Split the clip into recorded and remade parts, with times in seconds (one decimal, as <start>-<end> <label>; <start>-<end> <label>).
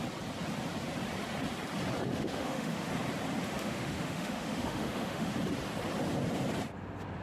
0.0-2.1 recorded; 2.1-2.9 remade; 2.9-3.6 recorded; 3.6-5.3 remade; 5.3-7.2 recorded